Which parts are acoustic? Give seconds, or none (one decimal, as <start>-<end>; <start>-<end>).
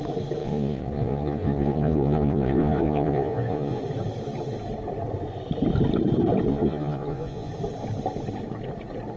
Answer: 0.0-0.4; 3.8-6.5; 7.5-9.2